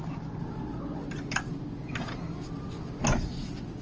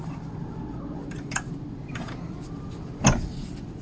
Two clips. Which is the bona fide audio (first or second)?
first